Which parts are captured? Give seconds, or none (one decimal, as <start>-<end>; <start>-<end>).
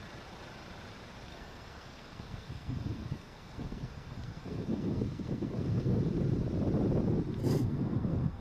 0.0-1.3; 6.0-7.4